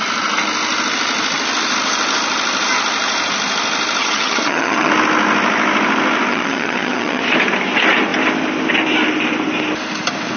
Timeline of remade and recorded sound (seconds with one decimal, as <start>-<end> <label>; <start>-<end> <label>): 0.0-4.0 recorded; 4.0-4.9 remade; 4.9-6.3 recorded; 6.3-7.2 remade; 7.2-10.4 recorded